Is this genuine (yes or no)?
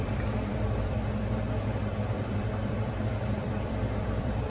no